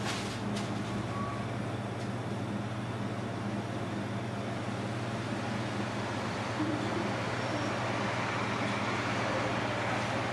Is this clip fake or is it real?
real